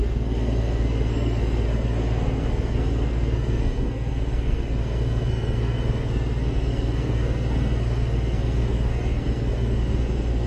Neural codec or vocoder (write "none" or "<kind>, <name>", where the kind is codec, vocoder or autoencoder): codec, SNAC